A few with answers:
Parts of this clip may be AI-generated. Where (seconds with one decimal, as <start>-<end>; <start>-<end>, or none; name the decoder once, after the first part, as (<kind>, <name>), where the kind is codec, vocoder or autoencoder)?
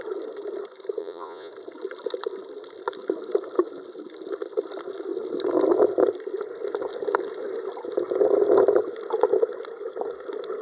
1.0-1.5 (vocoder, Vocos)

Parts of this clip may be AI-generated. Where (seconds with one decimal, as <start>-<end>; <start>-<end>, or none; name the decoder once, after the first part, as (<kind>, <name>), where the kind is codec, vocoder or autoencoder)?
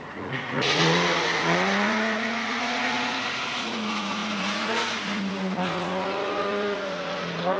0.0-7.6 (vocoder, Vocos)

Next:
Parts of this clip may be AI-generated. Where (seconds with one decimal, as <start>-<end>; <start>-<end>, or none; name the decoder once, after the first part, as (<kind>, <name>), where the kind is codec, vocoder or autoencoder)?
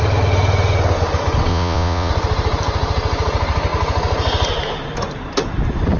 1.5-2.1 (vocoder, Vocos)